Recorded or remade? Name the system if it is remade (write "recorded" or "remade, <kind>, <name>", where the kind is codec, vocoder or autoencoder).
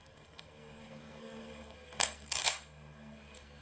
remade, codec, SNAC